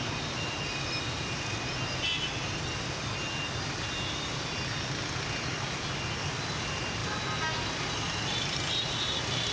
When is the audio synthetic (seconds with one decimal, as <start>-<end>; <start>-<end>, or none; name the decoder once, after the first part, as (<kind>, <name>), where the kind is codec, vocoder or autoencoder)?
none